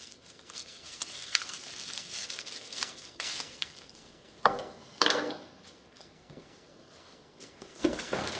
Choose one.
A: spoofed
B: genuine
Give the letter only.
A